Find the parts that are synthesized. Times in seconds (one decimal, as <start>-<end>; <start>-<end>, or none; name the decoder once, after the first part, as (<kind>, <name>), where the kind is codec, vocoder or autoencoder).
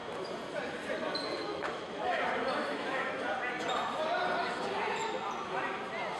1.5-2.2 (autoencoder, DAC-VAE); 2.6-3.2